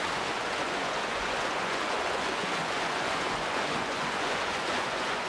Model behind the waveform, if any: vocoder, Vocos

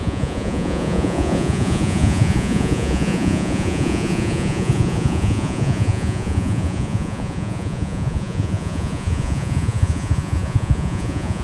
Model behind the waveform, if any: vocoder, Vocos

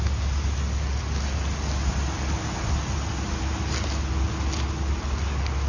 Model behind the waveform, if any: none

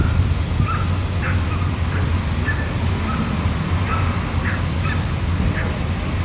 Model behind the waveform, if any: none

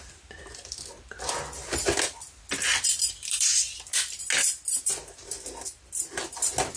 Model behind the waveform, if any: none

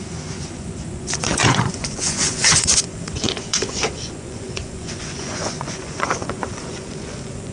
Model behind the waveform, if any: vocoder, Vocos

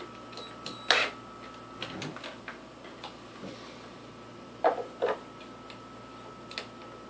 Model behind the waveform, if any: none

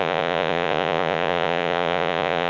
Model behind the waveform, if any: vocoder, Vocos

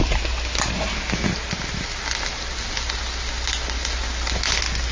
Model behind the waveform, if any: none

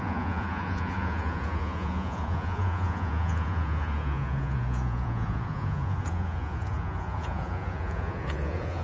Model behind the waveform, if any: vocoder, Vocos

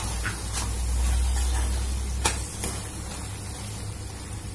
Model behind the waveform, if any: none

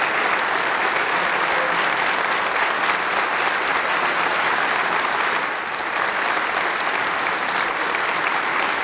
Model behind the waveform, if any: none